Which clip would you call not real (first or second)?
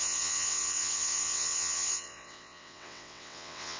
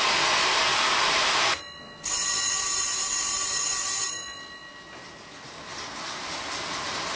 first